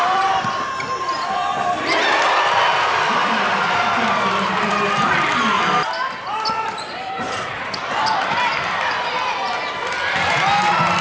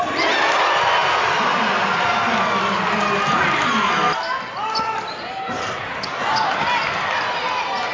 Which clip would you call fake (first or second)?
first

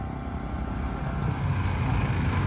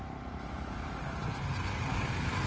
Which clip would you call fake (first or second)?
second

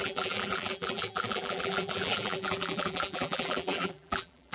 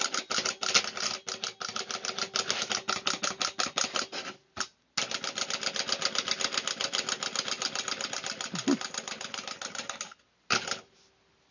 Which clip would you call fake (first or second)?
first